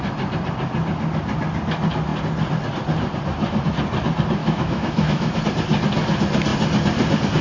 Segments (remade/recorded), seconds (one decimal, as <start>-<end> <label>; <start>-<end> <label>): 0.0-4.4 recorded; 4.4-5.4 remade; 5.4-7.4 recorded